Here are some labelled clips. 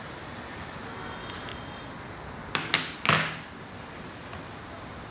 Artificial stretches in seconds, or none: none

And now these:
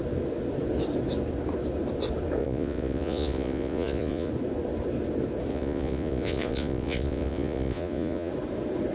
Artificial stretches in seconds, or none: 2.4-4.3 (vocoder, Vocos); 5.5-8.3

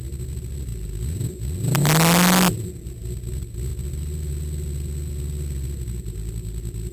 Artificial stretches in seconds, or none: none

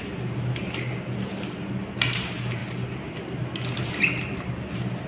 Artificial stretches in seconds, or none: none